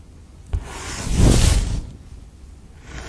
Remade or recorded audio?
remade